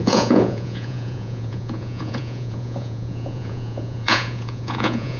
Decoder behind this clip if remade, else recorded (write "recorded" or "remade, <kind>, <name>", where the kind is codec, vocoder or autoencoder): remade, vocoder, Vocos